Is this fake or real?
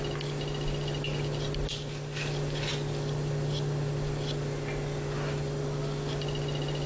real